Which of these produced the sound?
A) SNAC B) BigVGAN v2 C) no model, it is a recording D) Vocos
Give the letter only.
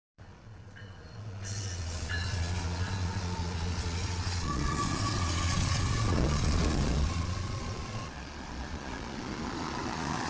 D